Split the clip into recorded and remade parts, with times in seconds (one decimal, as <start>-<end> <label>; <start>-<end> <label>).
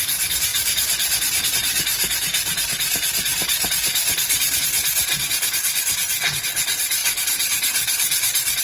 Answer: 0.0-0.5 recorded; 0.5-1.5 remade; 1.5-7.0 recorded; 7.0-8.6 remade